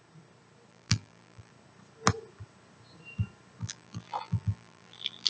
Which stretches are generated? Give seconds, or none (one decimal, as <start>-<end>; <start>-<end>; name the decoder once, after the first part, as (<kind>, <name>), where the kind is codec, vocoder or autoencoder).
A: 0.7-1.5 (vocoder, BigVGAN v2); 3.6-5.3